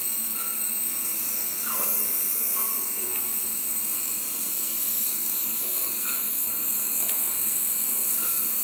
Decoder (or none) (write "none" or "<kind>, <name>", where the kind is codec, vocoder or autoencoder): codec, SNAC